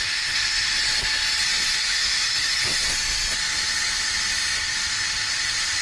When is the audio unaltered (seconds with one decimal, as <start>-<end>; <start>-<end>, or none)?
0.0-1.8; 2.6-5.8